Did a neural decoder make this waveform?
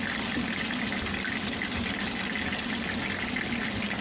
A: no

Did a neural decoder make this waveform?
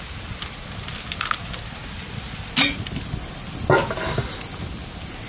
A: no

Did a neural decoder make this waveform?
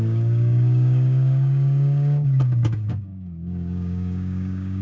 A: yes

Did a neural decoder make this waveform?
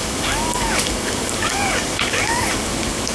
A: yes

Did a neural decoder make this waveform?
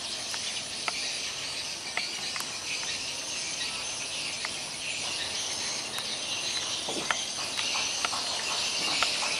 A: no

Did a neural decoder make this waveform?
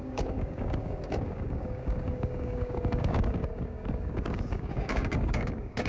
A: yes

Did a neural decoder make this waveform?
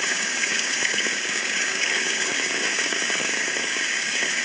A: yes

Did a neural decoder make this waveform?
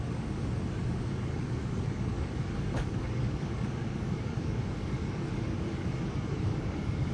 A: yes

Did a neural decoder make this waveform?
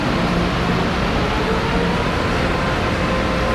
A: no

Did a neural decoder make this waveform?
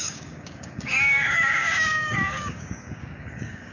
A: yes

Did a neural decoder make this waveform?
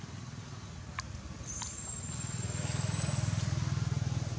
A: no